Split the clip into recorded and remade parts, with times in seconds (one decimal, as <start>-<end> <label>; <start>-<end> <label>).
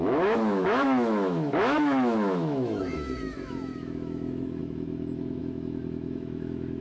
0.0-6.8 remade